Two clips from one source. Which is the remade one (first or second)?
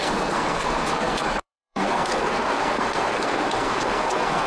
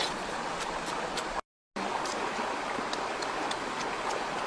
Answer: first